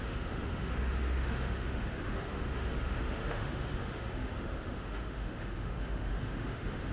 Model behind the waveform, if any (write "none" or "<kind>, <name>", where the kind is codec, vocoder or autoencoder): autoencoder, DAC-VAE